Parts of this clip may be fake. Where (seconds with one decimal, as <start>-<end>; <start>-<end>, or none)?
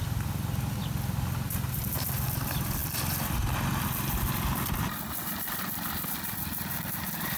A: none